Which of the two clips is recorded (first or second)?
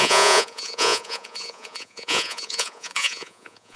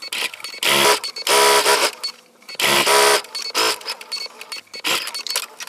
second